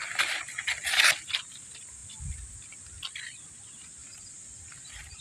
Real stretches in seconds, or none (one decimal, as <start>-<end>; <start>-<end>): 0.0-5.2

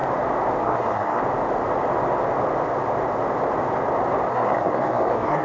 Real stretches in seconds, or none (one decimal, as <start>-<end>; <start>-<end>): 0.0-0.6; 1.2-4.3

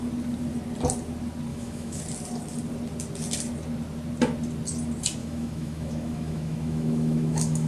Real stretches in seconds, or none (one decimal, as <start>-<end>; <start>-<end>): 0.0-1.5; 2.0-5.2

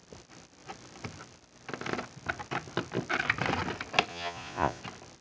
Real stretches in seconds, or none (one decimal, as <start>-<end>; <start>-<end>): 0.0-4.1; 4.8-5.2

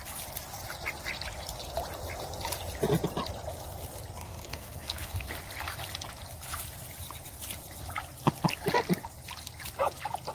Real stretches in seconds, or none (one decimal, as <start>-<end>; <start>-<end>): 0.0-4.2; 5.3-10.3